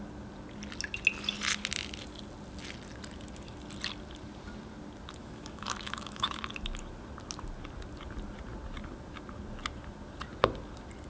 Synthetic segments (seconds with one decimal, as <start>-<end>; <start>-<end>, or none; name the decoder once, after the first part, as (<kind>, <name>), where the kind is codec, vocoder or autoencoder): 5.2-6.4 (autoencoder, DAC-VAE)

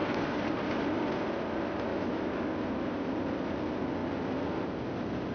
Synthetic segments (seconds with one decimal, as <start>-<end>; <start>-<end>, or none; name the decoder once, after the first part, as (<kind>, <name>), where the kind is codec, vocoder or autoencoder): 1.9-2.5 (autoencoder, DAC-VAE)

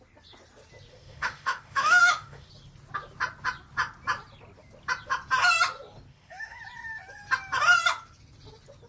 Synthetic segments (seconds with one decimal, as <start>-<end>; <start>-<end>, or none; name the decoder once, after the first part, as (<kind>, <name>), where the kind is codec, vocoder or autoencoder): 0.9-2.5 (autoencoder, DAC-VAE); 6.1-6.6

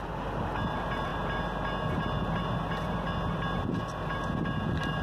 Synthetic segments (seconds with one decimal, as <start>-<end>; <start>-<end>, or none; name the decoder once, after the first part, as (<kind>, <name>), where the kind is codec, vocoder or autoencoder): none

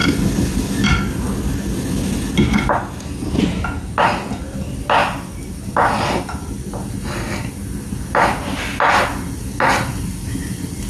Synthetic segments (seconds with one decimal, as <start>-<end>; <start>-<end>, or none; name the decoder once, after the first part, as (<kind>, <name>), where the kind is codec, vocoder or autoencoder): none

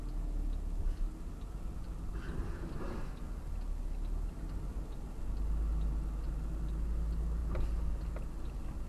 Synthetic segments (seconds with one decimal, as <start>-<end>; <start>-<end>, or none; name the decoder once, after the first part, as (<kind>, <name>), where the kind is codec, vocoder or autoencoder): none